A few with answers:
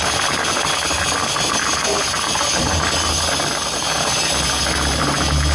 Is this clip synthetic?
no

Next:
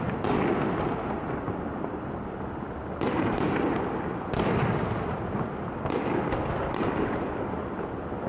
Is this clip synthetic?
no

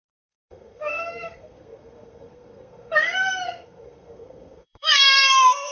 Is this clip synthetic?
yes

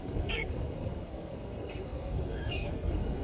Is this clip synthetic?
yes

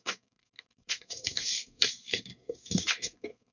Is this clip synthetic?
yes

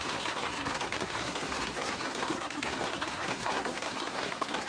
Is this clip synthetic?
yes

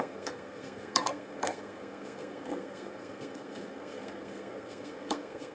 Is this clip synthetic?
yes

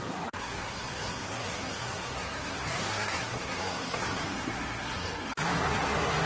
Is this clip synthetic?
yes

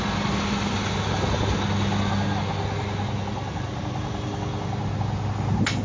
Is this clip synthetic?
no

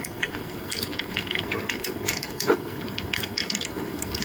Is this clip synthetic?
yes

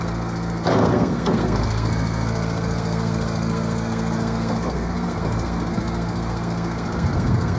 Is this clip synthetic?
yes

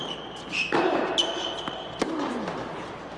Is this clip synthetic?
no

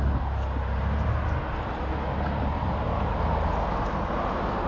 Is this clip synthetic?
no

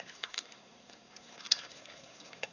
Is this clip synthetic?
yes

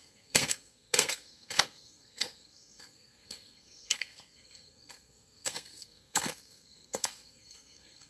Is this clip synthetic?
yes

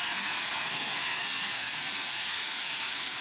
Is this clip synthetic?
yes